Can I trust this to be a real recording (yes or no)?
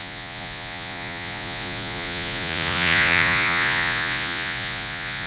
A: no